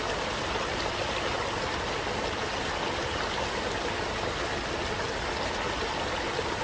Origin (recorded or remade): recorded